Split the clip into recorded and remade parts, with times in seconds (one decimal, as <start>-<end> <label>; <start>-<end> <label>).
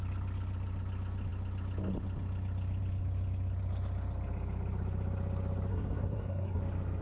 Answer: 0.0-5.7 recorded; 5.7-6.6 remade; 6.6-7.0 recorded